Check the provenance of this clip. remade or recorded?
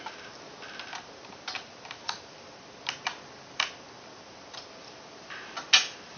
recorded